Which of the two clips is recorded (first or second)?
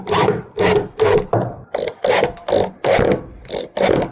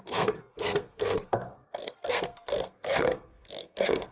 first